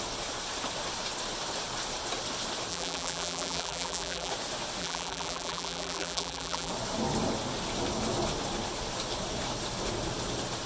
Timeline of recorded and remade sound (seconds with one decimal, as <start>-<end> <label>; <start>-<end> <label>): 0.0-2.7 recorded; 2.7-4.3 remade; 4.3-4.8 recorded; 4.8-6.7 remade; 6.7-10.7 recorded